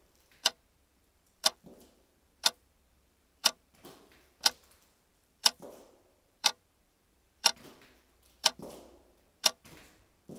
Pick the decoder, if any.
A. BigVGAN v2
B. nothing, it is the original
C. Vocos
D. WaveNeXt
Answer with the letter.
A